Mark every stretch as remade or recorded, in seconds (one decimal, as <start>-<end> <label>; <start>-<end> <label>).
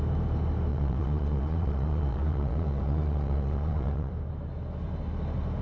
0.0-0.7 recorded; 0.7-4.1 remade; 4.1-5.6 recorded